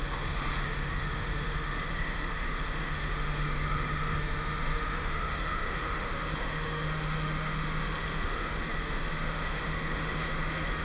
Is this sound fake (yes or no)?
yes